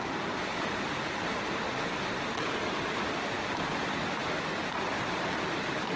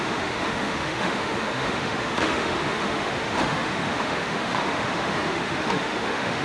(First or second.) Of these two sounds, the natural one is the first